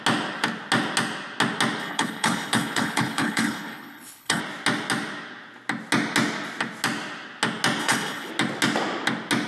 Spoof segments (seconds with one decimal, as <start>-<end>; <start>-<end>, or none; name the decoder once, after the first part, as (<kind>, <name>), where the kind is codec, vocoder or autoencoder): 1.8-4.4 (codec, HILCodec); 7.8-8.3